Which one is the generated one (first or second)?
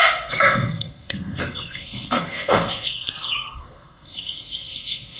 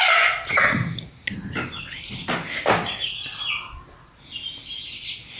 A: first